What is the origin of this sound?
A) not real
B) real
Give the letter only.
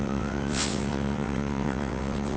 A